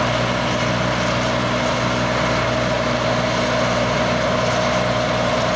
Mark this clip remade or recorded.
recorded